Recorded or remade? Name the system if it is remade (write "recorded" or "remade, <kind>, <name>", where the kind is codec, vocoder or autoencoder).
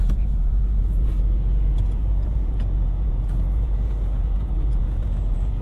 remade, vocoder, Vocos